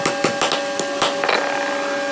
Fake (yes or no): no